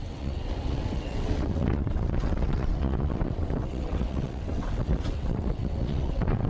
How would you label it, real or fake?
fake